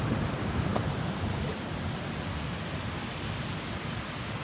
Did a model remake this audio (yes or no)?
no